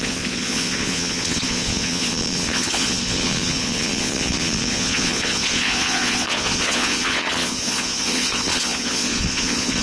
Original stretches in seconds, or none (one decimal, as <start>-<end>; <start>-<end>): none